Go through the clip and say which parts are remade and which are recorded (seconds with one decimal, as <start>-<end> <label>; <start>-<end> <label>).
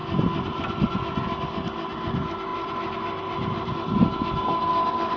0.0-2.5 recorded; 2.5-3.7 remade; 3.7-5.2 recorded